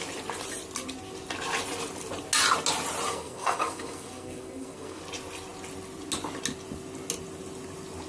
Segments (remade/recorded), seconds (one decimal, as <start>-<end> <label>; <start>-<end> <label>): 0.0-3.1 recorded; 3.1-5.0 remade; 5.0-8.1 recorded